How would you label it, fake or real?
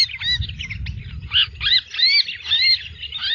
real